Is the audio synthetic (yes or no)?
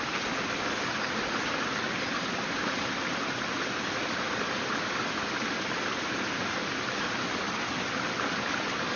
no